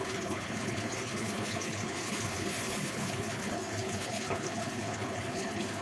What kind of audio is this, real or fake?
fake